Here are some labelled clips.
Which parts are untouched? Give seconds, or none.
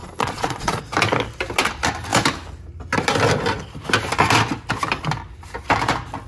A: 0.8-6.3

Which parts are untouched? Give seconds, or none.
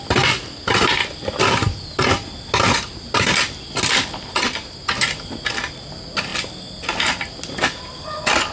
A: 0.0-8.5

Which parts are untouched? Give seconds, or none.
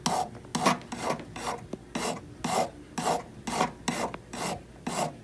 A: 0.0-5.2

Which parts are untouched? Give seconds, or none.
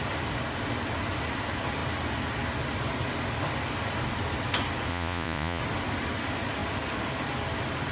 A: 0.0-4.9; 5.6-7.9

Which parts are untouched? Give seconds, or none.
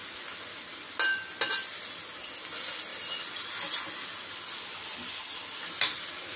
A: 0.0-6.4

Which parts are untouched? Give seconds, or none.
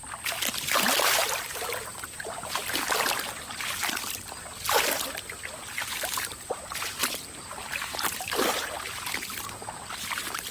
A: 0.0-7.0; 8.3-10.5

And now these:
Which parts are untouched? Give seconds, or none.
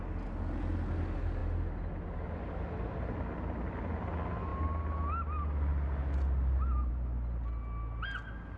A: 0.0-8.6